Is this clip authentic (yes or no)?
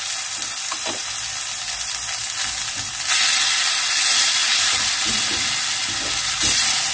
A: yes